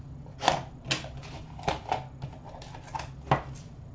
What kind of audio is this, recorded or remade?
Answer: recorded